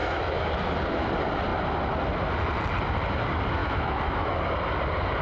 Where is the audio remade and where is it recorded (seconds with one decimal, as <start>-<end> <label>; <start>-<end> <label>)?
0.0-0.5 remade; 0.5-3.6 recorded; 3.6-4.4 remade; 4.4-5.2 recorded